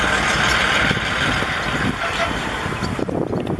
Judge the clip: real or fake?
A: fake